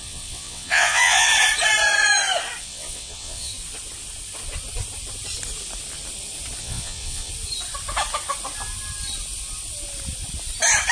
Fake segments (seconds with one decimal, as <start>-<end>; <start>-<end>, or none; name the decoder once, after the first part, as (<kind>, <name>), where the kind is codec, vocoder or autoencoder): 0.0-1.3 (vocoder, WaveNeXt); 2.6-3.5; 6.6-7.3